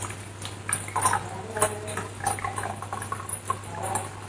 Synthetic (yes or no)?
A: no